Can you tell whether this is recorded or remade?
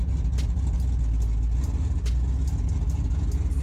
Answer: recorded